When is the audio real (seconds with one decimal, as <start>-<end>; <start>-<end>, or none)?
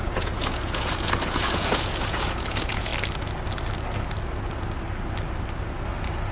2.9-6.3